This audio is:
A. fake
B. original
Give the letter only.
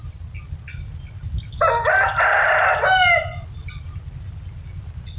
B